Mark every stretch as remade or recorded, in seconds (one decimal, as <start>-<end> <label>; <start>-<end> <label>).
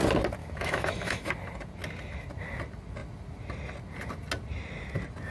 0.0-0.4 recorded; 0.4-1.3 remade; 1.3-5.3 recorded